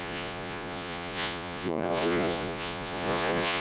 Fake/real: fake